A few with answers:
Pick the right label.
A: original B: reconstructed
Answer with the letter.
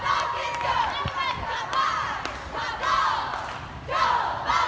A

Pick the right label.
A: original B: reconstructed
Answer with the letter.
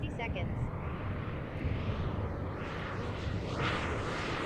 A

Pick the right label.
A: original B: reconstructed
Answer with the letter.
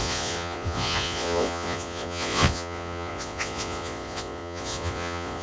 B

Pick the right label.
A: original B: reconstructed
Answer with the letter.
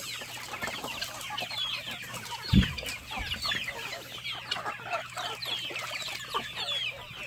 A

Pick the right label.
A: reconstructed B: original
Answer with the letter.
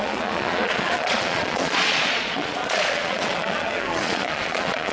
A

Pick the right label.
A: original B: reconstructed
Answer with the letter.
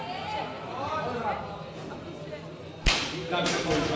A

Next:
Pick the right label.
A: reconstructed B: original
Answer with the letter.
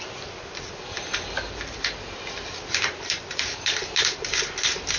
B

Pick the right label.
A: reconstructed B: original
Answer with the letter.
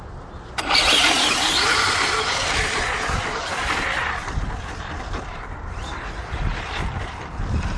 B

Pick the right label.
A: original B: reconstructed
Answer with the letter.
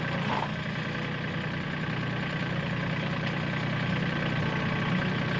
A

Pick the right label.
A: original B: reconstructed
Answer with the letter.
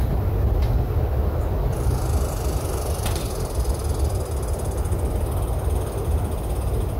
A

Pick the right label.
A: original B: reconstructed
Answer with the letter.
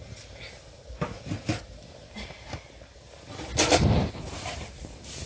B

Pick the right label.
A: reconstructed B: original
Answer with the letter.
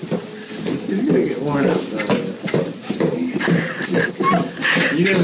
B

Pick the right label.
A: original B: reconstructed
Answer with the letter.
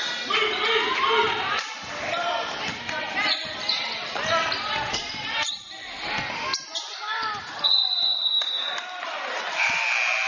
A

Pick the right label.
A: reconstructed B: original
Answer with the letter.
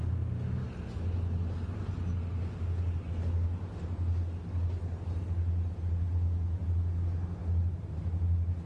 B